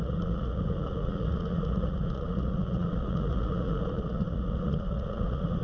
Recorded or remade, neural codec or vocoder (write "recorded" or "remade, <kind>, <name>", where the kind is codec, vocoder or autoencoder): remade, vocoder, Vocos